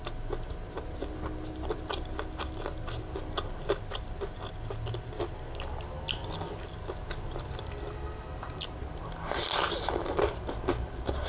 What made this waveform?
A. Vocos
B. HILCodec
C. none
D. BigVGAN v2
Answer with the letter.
C